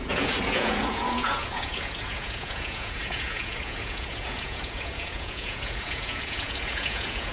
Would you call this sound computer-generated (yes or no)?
yes